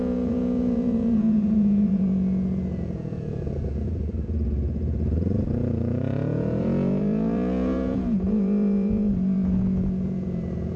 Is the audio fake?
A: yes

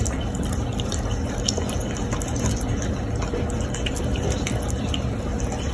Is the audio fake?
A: no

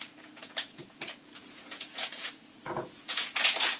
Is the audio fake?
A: yes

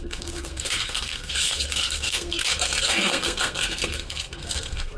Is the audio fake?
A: yes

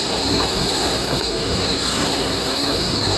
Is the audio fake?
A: yes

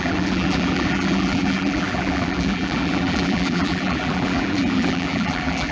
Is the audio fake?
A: yes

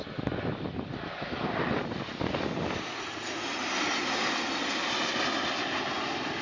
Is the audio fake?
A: no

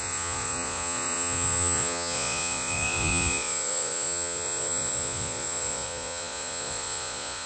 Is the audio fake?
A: yes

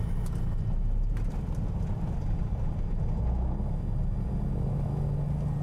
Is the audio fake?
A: no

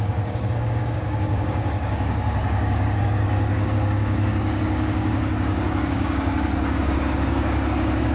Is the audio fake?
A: yes